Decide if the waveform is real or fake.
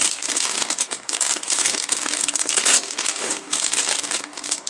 fake